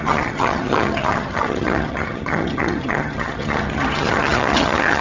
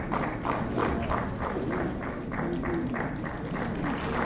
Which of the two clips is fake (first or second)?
first